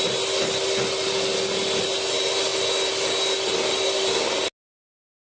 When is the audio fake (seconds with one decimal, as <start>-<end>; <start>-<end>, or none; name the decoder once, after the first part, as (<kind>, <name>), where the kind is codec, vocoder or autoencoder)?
none